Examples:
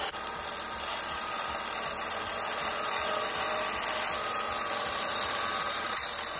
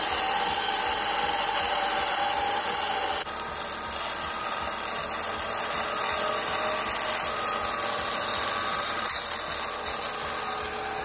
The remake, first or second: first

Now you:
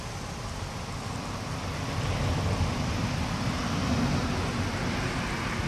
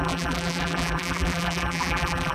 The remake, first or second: second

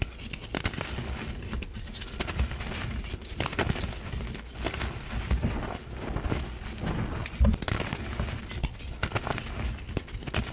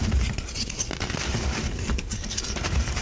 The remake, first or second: second